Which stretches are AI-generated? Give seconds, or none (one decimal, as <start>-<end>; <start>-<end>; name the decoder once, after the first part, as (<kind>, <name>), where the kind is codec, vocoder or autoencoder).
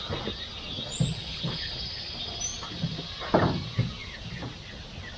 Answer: 1.2-1.7 (codec, HILCodec)